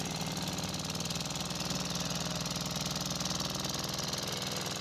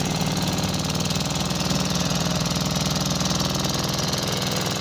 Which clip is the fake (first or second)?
second